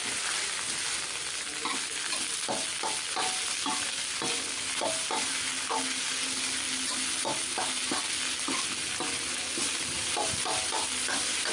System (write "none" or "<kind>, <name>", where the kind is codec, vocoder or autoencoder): none